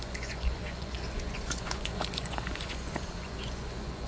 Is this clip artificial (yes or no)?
yes